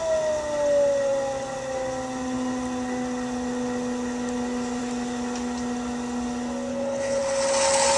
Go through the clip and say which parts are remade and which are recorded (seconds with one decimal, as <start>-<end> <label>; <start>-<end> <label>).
0.0-6.7 recorded; 6.7-7.2 remade; 7.2-8.0 recorded